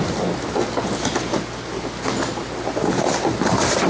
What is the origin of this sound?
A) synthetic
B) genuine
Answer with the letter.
B